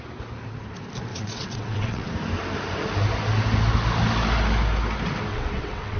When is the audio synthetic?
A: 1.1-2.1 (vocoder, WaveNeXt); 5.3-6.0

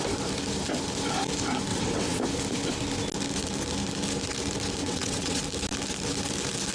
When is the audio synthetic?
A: 1.7-2.2 (vocoder, WaveNeXt); 4.8-5.4

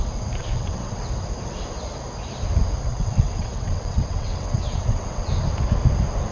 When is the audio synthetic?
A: 0.4-1.0 (vocoder, WaveNeXt); 2.9-5.3

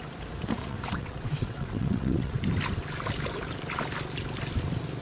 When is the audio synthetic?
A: 0.6-2.4 (vocoder, WaveNeXt)

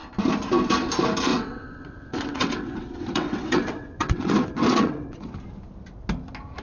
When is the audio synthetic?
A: 1.3-5.3 (vocoder, WaveNeXt)

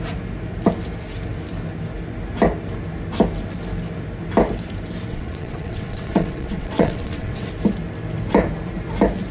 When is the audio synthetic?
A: 5.1-7.5 (vocoder, WaveNeXt)